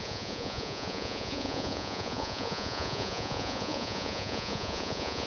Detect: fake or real fake